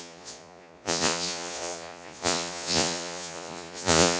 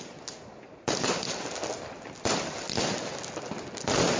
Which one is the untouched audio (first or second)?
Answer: second